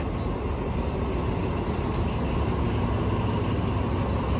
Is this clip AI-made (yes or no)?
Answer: no